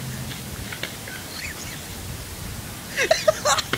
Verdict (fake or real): real